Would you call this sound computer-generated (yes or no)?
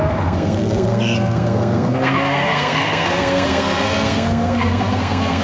yes